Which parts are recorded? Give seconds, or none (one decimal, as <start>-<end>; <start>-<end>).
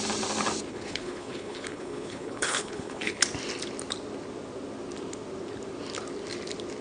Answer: 0.0-0.7; 3.2-6.8